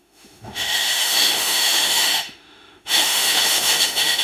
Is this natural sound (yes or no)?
no